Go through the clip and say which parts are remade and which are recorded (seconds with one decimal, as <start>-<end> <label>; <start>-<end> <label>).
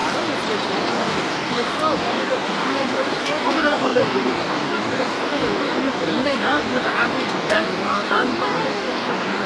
0.0-0.9 recorded; 0.9-9.5 remade